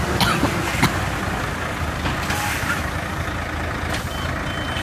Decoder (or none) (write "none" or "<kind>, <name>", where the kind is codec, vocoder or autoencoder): none